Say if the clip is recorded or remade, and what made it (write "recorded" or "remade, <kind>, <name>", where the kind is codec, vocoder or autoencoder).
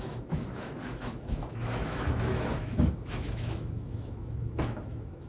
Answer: remade, autoencoder, DAC-VAE